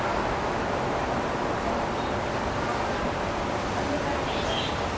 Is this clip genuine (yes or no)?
yes